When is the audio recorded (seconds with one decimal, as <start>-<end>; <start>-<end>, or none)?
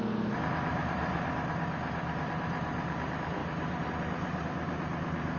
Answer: 0.0-0.7; 1.3-3.4; 3.9-5.4